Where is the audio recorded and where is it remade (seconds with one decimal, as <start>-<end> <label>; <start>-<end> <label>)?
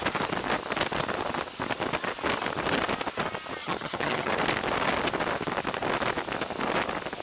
0.0-3.6 recorded; 3.6-4.3 remade; 4.3-7.2 recorded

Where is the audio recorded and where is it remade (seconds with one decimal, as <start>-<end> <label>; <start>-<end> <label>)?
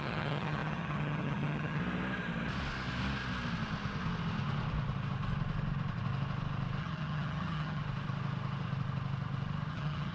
0.0-1.8 remade; 1.8-6.8 recorded; 6.8-7.8 remade; 7.8-9.7 recorded; 9.7-10.1 remade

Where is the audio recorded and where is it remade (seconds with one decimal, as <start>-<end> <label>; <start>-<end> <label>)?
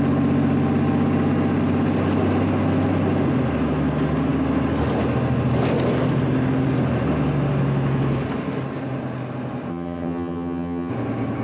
0.0-9.7 recorded; 9.7-10.9 remade; 10.9-11.4 recorded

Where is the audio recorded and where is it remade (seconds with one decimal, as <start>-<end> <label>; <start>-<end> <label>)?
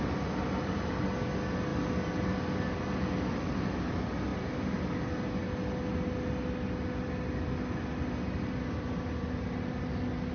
0.0-10.3 recorded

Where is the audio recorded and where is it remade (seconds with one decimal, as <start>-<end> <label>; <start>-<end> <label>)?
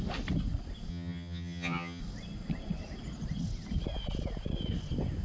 0.0-0.9 recorded; 0.9-2.0 remade; 2.0-5.2 recorded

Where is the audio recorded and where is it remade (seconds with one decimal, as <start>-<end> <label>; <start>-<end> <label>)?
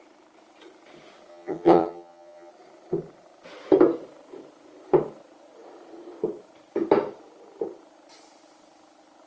0.0-1.3 recorded; 1.3-2.5 remade; 2.5-9.3 recorded